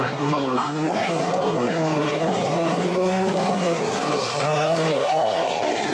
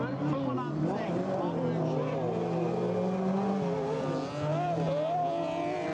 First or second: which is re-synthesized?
first